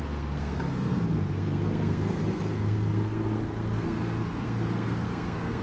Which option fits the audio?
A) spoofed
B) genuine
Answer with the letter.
A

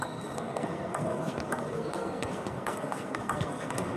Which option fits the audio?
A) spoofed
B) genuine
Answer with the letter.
A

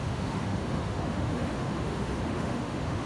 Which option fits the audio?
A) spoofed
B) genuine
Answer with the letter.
A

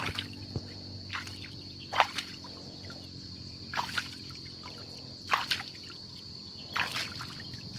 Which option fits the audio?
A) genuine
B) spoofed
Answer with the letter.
A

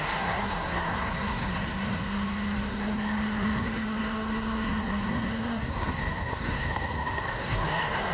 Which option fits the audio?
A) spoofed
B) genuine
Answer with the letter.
A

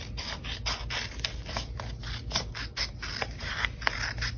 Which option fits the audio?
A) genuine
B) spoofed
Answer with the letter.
A